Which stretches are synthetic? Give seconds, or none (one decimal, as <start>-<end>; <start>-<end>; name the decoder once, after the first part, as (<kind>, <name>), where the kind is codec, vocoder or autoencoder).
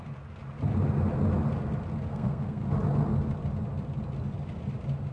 2.1-2.6 (codec, SNAC)